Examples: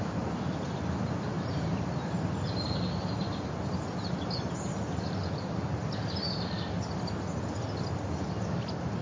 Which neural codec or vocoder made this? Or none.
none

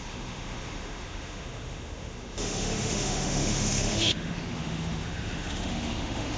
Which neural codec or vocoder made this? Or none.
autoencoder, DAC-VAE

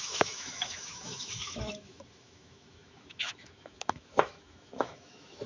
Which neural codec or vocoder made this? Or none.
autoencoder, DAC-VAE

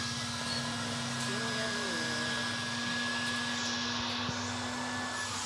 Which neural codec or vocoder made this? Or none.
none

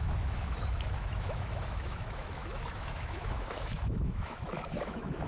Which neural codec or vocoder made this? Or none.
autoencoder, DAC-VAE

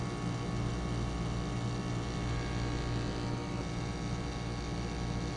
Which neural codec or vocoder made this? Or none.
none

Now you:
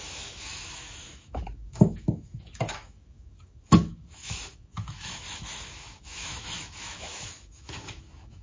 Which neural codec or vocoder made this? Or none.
autoencoder, DAC-VAE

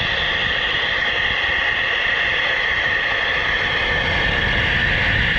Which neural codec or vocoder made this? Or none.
none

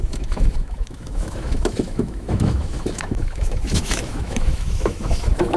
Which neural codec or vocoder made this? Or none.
autoencoder, DAC-VAE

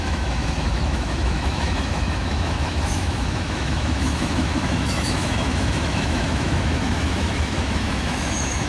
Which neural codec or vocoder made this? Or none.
autoencoder, DAC-VAE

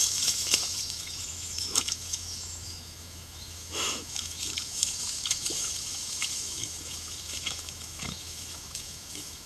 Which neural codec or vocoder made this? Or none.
autoencoder, DAC-VAE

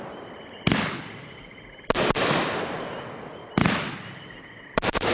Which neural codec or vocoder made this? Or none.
none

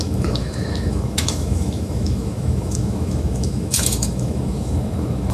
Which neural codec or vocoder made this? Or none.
autoencoder, DAC-VAE